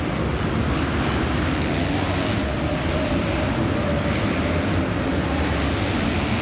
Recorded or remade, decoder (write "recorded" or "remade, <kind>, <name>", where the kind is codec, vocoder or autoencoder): recorded